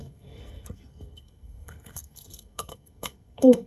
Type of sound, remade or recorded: remade